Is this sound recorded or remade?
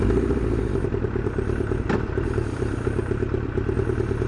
recorded